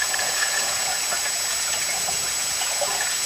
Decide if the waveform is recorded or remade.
remade